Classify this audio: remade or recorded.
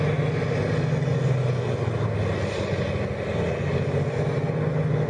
recorded